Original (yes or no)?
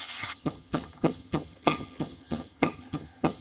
no